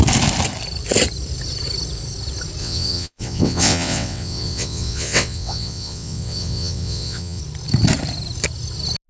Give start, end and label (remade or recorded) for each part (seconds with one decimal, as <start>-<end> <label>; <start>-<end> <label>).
0.0-2.6 recorded; 2.6-7.4 remade; 7.4-9.1 recorded